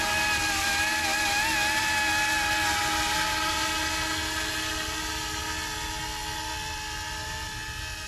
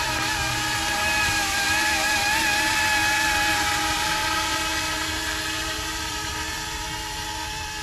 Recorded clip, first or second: first